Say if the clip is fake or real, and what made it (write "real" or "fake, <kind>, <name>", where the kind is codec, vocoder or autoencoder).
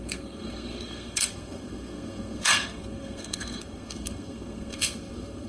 fake, codec, SNAC